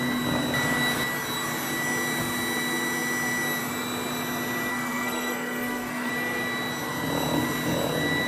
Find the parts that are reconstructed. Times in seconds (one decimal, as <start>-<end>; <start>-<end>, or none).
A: 4.7-6.1